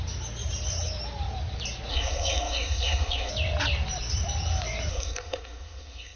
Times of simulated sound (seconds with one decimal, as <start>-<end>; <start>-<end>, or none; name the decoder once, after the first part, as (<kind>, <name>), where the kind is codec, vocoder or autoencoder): 1.9-3.3 (codec, SNAC); 4.9-6.2